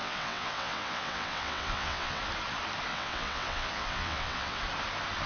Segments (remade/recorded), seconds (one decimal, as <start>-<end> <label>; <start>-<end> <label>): 0.0-2.2 remade; 2.2-2.9 recorded; 2.9-4.6 remade; 4.6-5.3 recorded